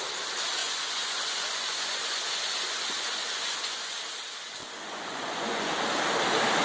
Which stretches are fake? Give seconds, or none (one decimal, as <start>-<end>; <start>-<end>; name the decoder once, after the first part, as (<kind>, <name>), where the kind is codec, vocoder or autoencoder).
0.6-4.0 (vocoder, Vocos); 4.6-5.7